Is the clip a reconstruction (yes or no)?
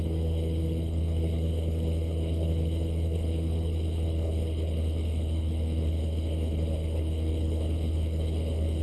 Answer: yes